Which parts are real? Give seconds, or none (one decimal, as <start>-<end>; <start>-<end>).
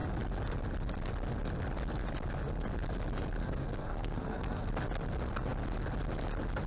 0.0-3.4; 4.7-6.7